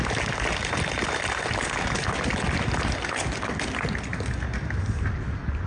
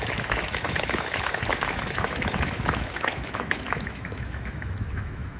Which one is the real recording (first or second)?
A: first